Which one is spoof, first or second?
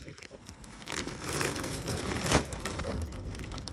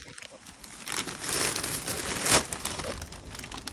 first